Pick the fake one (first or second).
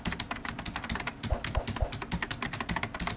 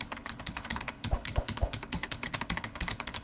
second